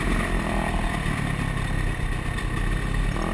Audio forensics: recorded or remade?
recorded